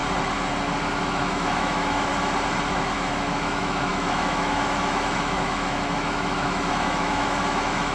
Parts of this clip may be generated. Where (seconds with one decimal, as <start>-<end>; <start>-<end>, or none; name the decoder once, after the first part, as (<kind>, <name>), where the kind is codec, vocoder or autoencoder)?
1.0-2.1 (autoencoder, DAC-VAE); 2.7-7.9